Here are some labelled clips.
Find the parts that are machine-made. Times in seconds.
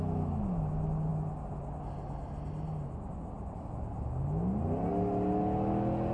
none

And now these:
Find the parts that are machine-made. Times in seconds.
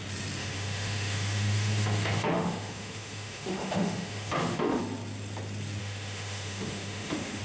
0.4-4.8; 5.8-7.4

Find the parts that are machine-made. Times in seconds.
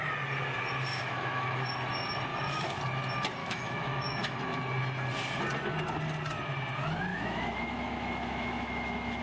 0.9-1.7; 2.3-2.8; 3.4-4.6; 7.1-9.2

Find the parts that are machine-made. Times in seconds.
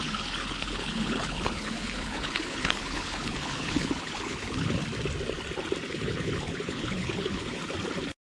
0.0-4.8; 5.9-7.6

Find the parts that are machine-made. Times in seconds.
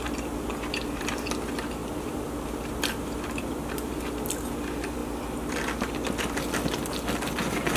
1.8-4.0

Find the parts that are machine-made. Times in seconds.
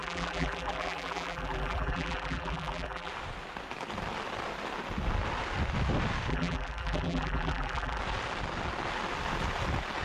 0.0-3.1; 6.3-8.0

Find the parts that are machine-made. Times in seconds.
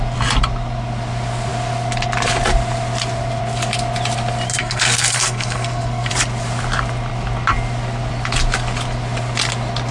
4.6-6.1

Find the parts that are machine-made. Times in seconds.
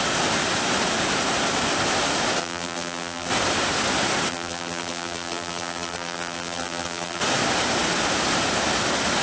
2.4-3.3; 4.3-7.2